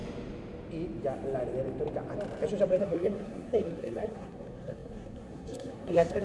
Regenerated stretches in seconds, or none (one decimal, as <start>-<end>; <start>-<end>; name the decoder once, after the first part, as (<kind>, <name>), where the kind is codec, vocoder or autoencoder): 2.8-6.2 (codec, SNAC)